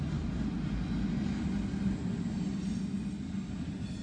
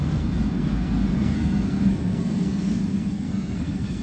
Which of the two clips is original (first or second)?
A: first